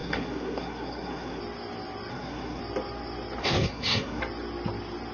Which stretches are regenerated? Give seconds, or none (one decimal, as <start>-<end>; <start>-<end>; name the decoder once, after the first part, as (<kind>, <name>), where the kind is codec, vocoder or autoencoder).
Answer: 0.0-1.4 (codec, SNAC); 2.1-2.6; 3.4-4.2